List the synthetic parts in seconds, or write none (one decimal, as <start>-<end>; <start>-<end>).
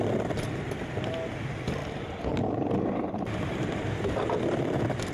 1.8-5.1